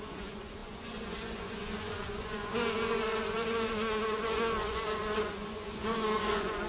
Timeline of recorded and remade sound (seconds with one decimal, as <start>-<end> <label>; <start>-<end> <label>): 0.0-6.7 remade